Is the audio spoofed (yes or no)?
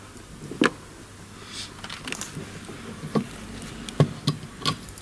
no